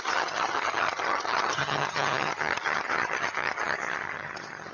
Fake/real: fake